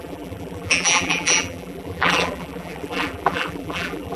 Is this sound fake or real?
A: fake